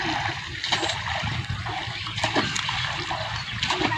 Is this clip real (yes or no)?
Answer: yes